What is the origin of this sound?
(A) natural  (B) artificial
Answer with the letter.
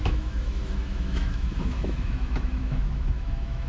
B